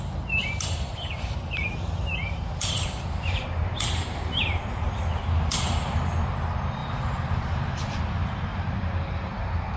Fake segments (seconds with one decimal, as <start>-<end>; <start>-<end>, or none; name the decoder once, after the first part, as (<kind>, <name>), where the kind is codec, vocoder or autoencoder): 0.4-5.7 (vocoder, BigVGAN v2); 6.8-8.0; 8.5-9.8